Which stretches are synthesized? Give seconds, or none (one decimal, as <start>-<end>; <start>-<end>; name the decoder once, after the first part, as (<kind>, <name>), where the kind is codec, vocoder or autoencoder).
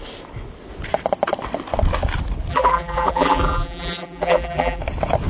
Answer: 2.5-4.8 (vocoder, BigVGAN v2)